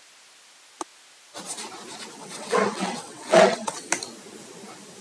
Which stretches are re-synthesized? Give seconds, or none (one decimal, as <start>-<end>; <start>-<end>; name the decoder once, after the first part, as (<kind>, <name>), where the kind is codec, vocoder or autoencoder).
2.2-3.9 (vocoder, WaveNeXt)